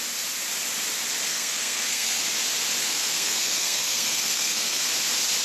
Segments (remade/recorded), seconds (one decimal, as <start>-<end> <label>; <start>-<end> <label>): 0.0-1.3 recorded; 1.3-2.2 remade; 2.2-2.8 recorded; 2.8-4.9 remade; 4.9-5.4 recorded